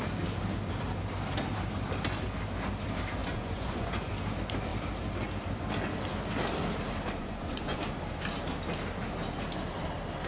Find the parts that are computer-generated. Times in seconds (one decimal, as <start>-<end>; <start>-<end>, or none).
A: 3.2-4.1; 7.2-7.8